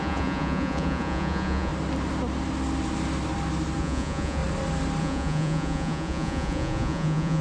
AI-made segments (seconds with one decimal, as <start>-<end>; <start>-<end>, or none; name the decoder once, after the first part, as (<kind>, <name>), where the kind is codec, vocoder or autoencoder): 0.0-1.7 (vocoder, Vocos); 3.8-4.4; 5.0-7.4